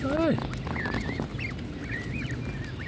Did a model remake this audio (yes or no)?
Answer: no